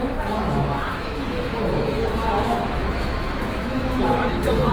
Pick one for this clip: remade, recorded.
remade